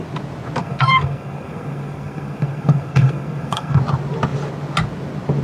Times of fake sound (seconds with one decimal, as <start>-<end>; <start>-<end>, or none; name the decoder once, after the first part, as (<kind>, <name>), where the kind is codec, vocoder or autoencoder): 0.6-3.8 (codec, SNAC)